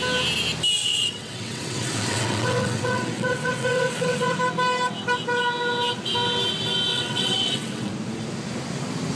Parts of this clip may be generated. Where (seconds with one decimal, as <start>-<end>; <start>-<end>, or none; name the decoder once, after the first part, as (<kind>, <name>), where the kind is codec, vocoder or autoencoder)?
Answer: 0.8-4.4 (vocoder, WaveNeXt); 6.9-7.9